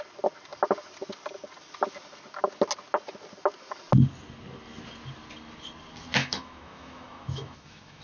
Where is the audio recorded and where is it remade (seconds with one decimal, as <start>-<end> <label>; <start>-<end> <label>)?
0.0-6.2 recorded; 6.2-8.0 remade